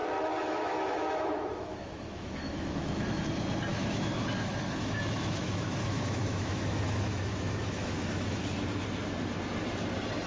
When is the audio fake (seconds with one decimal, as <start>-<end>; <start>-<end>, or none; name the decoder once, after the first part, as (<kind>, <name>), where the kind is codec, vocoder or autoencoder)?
0.0-3.2 (autoencoder, DAC-VAE); 3.7-8.4